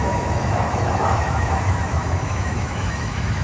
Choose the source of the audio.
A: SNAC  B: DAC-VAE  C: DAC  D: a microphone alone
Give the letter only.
B